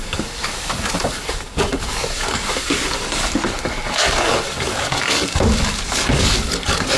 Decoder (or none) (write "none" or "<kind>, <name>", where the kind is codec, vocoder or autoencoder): codec, DAC